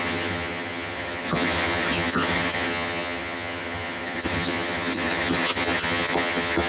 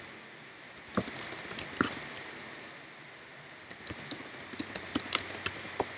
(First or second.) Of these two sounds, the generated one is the first